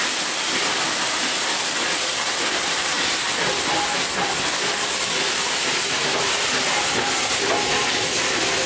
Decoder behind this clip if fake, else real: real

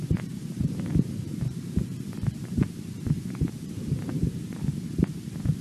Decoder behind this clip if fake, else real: fake, vocoder, BigVGAN v2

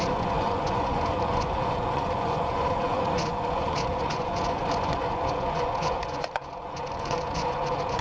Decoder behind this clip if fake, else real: fake, vocoder, Vocos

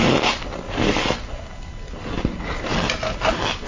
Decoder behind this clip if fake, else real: real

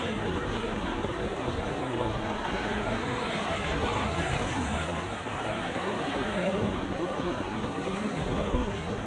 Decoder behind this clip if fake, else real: fake, codec, SNAC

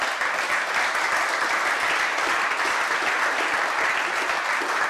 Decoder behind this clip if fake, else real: real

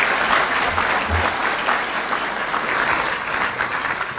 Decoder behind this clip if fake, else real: real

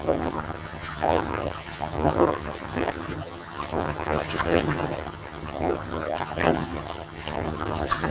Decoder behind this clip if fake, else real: fake, vocoder, HiFi-GAN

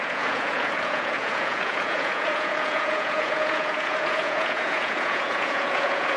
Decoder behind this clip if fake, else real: fake, vocoder, Vocos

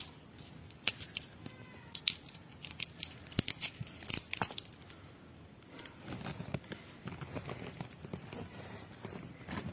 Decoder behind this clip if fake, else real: real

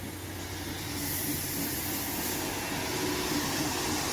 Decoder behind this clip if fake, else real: real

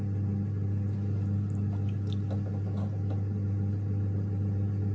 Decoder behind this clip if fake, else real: real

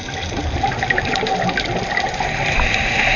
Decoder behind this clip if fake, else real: real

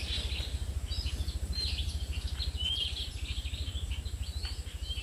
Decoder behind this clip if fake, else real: real